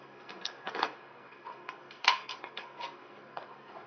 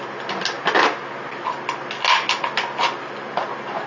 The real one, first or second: second